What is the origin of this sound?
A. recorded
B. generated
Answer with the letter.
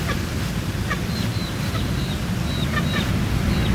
A